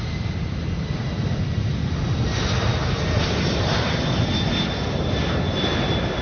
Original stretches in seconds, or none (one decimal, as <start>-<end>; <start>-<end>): 0.0-6.2